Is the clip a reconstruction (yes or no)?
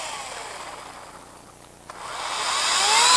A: no